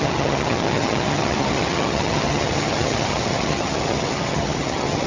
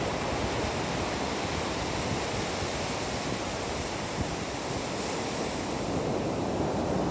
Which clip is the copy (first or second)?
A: first